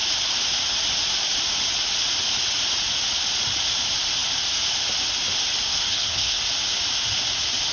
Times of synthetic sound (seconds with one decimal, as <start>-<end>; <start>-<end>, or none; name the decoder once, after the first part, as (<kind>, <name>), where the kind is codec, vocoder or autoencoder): 5.7-6.4 (codec, HILCodec)